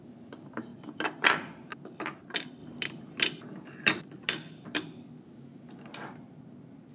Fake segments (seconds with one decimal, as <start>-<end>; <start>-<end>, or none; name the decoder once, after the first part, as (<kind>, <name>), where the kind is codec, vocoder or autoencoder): none